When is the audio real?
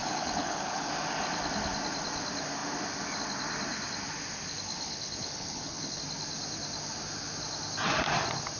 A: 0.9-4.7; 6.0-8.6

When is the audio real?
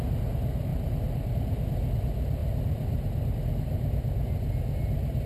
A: 0.0-5.3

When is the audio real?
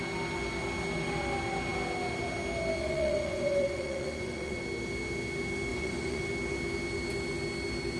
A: 0.0-2.8; 4.6-5.7; 6.2-8.0